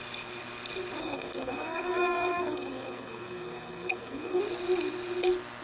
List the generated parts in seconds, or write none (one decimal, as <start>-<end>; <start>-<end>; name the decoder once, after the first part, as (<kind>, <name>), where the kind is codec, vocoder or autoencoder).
1.0-4.4 (codec, SNAC)